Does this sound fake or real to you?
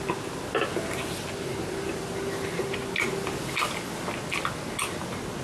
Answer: real